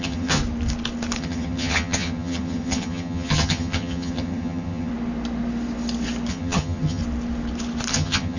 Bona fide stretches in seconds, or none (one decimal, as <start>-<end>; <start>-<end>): 0.4-1.2; 4.9-6.3; 7.0-7.9

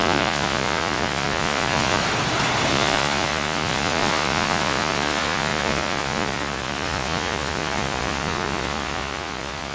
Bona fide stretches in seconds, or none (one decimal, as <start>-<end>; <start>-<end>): 2.0-2.7